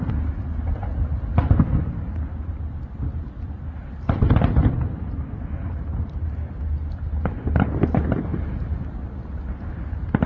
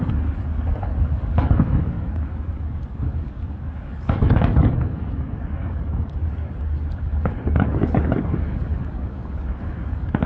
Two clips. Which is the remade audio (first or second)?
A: second